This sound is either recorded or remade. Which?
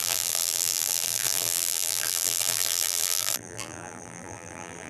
remade